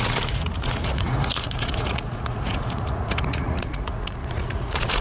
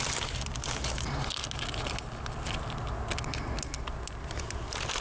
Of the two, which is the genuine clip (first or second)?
second